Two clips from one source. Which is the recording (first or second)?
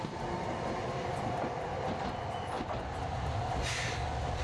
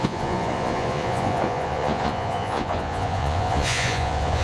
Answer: first